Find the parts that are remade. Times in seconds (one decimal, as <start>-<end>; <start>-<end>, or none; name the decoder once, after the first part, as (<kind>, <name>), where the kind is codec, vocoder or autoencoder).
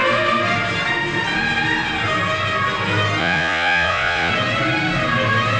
3.2-4.3 (vocoder, Vocos)